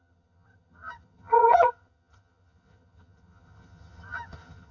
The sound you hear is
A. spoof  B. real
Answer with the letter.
A